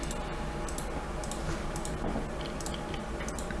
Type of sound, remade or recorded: recorded